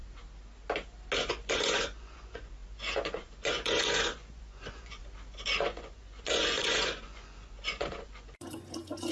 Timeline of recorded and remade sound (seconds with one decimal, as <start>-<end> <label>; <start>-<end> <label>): 0.0-1.2 recorded; 1.2-5.0 remade; 5.0-5.5 recorded; 5.5-9.1 remade